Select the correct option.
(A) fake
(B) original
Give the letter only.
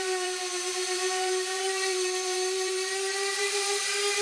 A